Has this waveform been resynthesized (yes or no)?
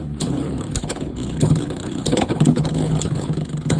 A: yes